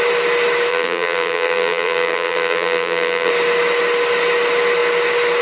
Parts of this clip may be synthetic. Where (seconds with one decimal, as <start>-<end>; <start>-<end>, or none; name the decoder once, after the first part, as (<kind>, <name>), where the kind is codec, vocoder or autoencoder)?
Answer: 0.7-3.3 (vocoder, BigVGAN v2)